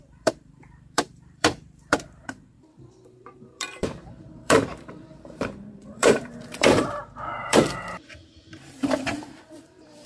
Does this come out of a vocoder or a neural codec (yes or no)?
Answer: yes